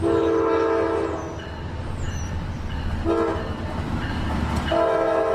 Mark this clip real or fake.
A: real